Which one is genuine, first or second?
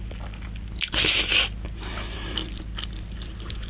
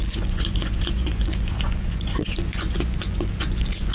first